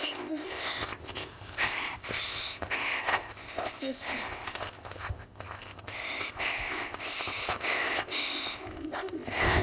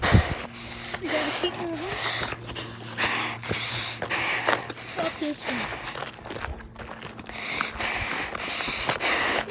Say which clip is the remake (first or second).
first